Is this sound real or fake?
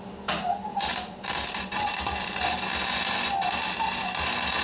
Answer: real